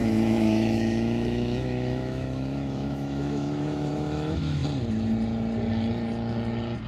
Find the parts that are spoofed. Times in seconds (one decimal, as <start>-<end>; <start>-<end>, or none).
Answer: 0.0-4.6